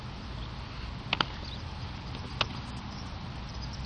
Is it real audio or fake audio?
real